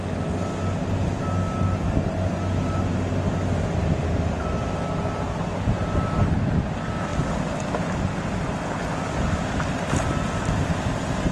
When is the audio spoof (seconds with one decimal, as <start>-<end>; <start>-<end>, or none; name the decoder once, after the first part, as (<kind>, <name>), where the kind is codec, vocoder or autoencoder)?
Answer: none